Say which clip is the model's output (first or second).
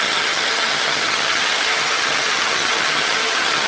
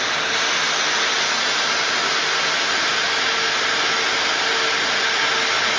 first